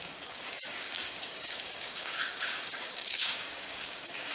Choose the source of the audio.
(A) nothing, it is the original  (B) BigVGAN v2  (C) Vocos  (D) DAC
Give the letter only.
D